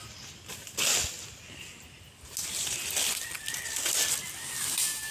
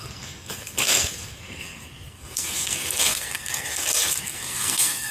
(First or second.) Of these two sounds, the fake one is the second